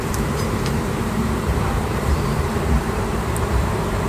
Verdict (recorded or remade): remade